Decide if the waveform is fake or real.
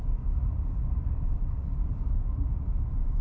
fake